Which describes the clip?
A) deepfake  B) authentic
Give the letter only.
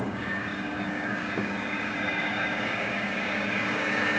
A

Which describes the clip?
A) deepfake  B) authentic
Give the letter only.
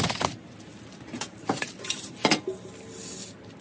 B